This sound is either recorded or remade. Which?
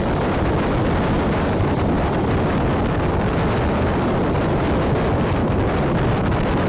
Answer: recorded